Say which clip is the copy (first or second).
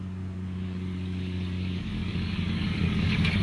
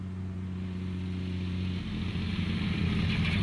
first